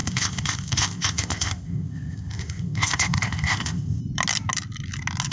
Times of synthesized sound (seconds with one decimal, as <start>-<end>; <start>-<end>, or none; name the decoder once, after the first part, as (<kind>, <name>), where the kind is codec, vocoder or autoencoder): 0.0-4.0 (codec, ZipCodec)